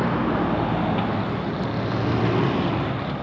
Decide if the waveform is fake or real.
real